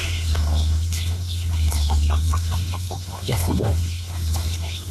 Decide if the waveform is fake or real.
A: fake